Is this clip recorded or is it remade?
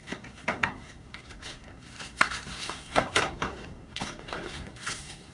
remade